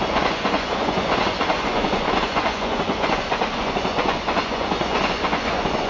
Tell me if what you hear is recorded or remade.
remade